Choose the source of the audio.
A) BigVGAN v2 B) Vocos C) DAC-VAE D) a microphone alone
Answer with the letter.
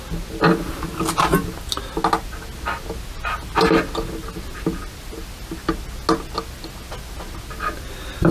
D